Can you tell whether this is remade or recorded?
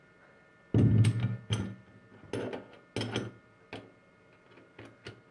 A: recorded